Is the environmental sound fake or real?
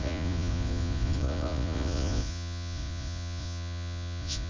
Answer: fake